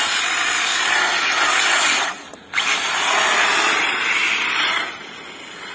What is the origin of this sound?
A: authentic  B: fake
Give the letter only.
A